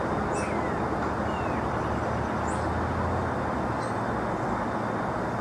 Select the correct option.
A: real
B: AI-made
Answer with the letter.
A